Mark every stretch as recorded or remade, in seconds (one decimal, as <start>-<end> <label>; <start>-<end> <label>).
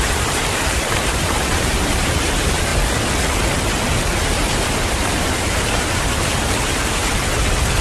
0.0-2.7 remade; 2.7-4.3 recorded; 4.3-7.0 remade; 7.0-7.8 recorded